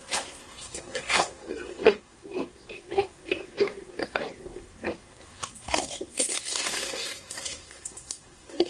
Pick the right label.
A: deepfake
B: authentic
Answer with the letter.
A